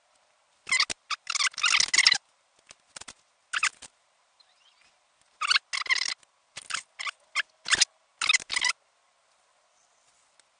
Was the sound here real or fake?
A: real